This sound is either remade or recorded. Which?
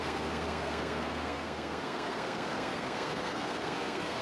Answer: remade